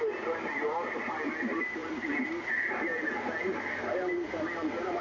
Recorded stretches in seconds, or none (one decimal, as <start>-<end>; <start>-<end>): 0.0-5.0